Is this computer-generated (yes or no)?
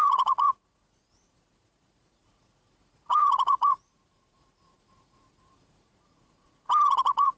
yes